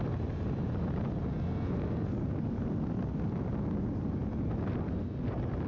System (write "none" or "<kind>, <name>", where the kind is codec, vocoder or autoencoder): none